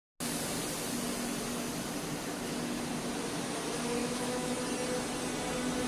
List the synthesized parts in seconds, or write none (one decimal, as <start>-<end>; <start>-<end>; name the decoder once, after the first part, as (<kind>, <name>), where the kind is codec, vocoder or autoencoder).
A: 4.0-4.6 (autoencoder, DAC-VAE)